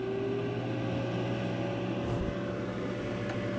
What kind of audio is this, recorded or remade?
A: recorded